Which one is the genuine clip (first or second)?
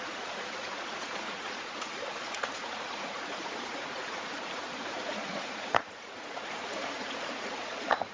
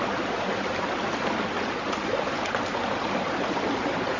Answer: second